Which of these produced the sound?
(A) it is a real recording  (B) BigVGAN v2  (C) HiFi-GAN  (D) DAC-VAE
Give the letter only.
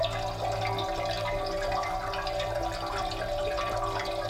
A